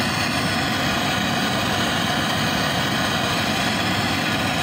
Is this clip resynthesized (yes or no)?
yes